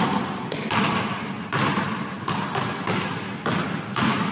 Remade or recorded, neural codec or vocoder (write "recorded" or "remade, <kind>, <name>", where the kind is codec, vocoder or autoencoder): recorded